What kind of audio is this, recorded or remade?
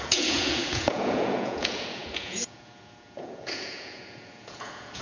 remade